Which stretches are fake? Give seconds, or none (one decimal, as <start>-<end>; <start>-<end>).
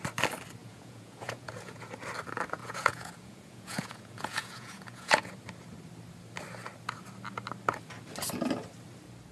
0.6-1.9; 2.6-5.3